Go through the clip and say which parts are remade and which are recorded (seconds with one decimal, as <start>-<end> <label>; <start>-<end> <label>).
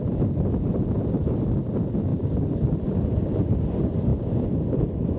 0.0-5.2 recorded